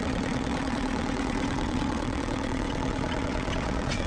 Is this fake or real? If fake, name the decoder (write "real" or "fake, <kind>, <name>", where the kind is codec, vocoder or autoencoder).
fake, vocoder, WaveNeXt